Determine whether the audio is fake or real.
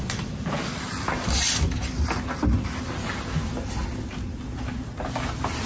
real